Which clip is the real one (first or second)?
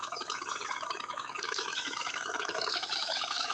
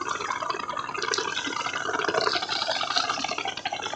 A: second